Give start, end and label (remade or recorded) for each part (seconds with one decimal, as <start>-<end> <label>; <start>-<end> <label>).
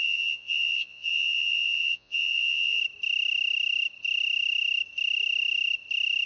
0.0-2.8 remade; 2.8-6.3 recorded